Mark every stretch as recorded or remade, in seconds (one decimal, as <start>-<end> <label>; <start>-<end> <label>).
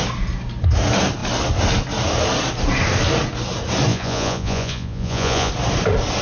0.0-3.9 recorded; 3.9-5.5 remade; 5.5-6.2 recorded